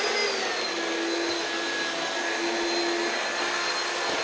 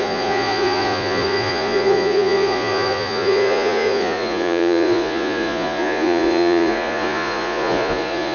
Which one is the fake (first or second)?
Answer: second